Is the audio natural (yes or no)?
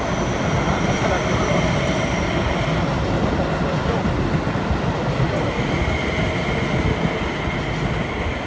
yes